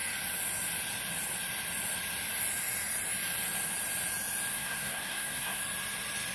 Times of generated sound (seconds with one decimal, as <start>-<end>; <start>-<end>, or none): 4.5-5.6